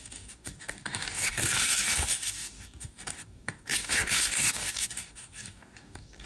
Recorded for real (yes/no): no